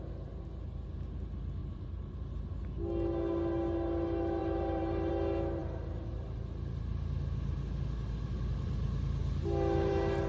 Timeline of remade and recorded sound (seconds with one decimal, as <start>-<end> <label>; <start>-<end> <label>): 0.0-1.6 recorded; 1.6-2.5 remade; 2.5-4.4 recorded; 4.4-5.1 remade; 5.1-10.3 recorded